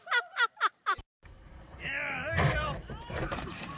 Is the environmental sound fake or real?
fake